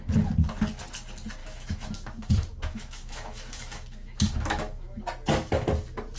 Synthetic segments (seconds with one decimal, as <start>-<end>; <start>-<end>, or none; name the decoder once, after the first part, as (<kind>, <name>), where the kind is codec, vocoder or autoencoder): 1.4-5.0 (autoencoder, DAC-VAE)